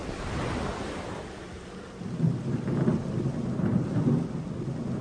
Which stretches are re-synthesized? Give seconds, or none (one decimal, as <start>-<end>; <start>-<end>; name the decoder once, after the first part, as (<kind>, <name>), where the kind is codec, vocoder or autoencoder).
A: 0.0-1.7 (vocoder, BigVGAN v2)